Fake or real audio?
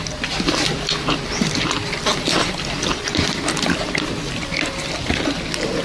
real